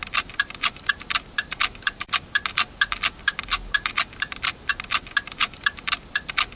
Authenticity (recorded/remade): recorded